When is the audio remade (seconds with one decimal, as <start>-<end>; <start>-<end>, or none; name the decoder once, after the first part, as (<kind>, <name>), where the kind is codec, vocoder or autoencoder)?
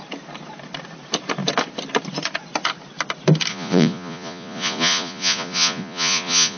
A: 3.5-6.6 (vocoder, Vocos)